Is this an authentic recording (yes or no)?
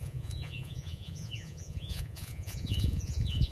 no